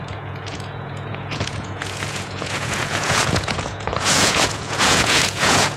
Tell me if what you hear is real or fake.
fake